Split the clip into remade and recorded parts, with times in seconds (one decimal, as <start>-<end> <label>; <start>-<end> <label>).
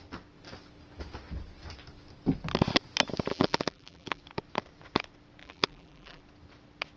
0.0-3.3 recorded; 3.3-4.2 remade; 4.2-5.4 recorded; 5.4-6.2 remade; 6.2-7.0 recorded